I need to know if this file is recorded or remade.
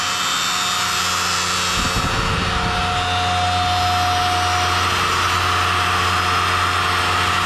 recorded